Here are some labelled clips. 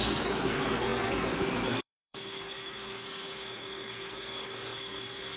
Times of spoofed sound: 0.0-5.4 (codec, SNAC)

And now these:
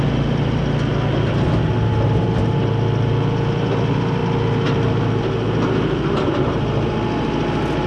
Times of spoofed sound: none

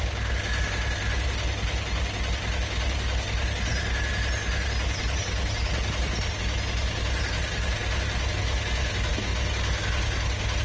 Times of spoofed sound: none

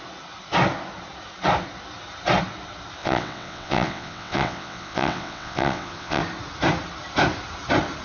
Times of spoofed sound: 3.0-6.2 (vocoder, WaveNeXt)

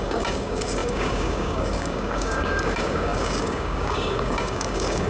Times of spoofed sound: 0.0-5.1 (codec, DAC)

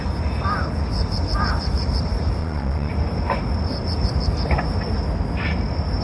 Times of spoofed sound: 2.4-2.9 (vocoder, Vocos)

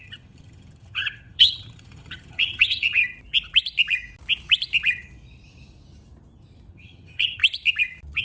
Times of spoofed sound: 0.0-3.0 (vocoder, HiFi-GAN); 6.7-7.4